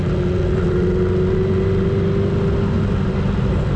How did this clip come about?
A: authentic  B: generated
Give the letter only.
A